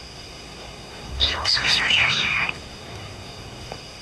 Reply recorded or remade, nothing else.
remade